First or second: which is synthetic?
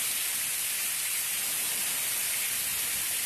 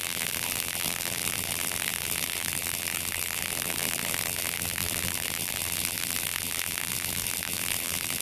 second